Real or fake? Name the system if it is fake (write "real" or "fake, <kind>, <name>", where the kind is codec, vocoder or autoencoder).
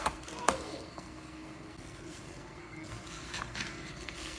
fake, codec, SNAC